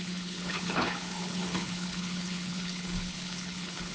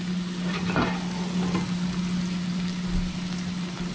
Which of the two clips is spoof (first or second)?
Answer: first